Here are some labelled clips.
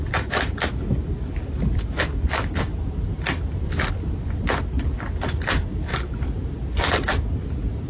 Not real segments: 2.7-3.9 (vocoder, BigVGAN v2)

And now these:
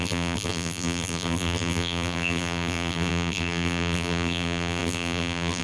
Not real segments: 0.0-5.6 (vocoder, BigVGAN v2)

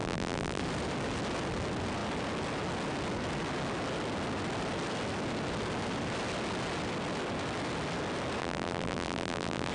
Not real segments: 0.0-0.6 (vocoder, BigVGAN v2); 8.4-9.7

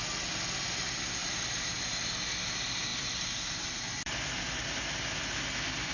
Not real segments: 1.2-2.1 (vocoder, BigVGAN v2); 2.9-4.6

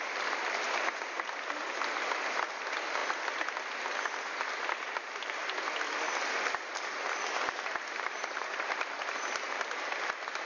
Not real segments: none